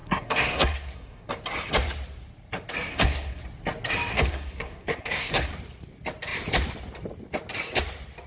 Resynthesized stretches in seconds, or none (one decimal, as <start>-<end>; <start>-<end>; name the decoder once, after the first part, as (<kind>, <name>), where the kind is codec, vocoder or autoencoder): 0.0-1.3 (codec, SNAC); 2.9-3.4; 4.1-5.5